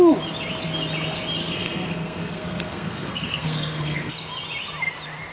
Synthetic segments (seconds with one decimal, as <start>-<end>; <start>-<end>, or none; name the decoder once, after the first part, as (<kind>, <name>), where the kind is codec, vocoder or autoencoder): 1.4-4.1 (codec, SNAC)